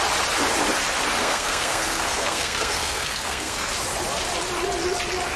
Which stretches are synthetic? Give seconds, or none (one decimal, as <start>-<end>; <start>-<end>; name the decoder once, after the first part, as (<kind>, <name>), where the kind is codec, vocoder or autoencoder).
1.2-3.7 (codec, SNAC)

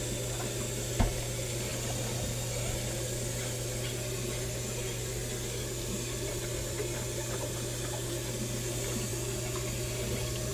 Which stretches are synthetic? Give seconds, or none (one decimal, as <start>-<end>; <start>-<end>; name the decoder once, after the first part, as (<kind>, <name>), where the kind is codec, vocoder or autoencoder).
none

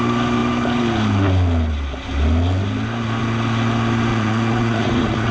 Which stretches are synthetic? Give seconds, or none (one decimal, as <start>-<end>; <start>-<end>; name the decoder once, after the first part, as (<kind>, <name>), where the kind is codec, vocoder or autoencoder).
4.1-5.3 (vocoder, Vocos)

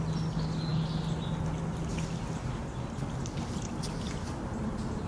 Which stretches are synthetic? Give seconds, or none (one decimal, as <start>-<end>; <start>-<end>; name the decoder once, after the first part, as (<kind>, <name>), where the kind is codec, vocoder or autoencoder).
none

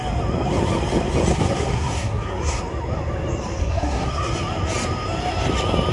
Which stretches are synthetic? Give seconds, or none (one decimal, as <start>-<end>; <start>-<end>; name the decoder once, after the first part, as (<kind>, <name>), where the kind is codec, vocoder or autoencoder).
1.3-2.6 (codec, SNAC); 3.6-4.3

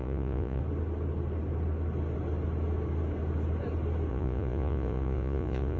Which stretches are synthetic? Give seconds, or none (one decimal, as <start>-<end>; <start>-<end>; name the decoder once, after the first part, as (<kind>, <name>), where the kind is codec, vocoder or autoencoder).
0.0-0.6 (vocoder, Vocos); 4.1-5.8

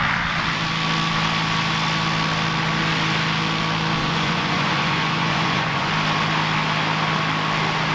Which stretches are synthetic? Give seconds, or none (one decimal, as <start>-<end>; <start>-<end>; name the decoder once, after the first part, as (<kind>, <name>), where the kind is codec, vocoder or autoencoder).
4.0-5.9 (vocoder, Vocos)